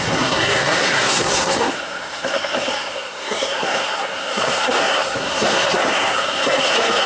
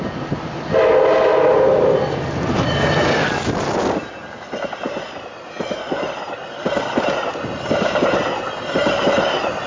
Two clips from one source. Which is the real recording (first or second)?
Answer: second